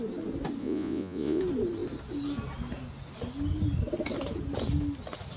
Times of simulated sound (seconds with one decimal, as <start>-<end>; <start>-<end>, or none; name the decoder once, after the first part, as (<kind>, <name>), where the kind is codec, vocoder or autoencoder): 0.6-1.4 (vocoder, Vocos)